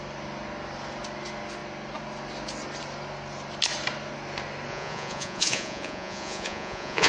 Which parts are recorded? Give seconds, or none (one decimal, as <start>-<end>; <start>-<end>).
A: 0.0-4.7

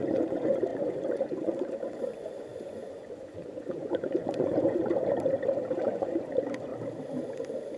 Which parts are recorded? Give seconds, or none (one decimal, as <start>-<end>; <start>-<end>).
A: 4.8-5.8; 6.7-7.8

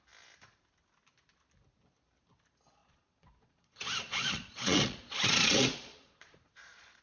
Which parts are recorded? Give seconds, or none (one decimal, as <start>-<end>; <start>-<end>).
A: 0.0-2.8

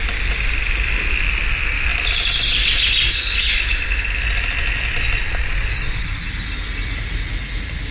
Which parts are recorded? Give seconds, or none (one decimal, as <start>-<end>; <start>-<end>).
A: 0.0-7.9

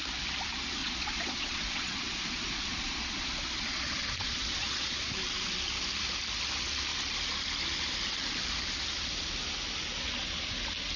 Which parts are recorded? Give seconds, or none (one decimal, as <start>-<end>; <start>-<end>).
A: 0.0-0.8; 5.1-11.0

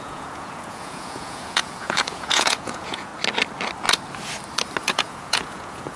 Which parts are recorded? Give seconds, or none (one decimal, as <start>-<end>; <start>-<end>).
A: 3.1-4.8